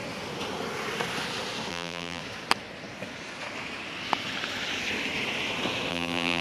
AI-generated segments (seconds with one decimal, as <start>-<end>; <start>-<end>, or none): 1.7-2.2; 5.9-6.4